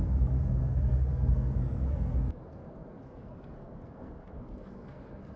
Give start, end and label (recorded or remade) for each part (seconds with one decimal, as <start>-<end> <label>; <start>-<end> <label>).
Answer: 0.0-5.4 remade